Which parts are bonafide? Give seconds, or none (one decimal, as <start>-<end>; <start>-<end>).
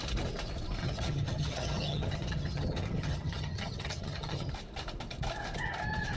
0.0-0.8; 4.5-6.2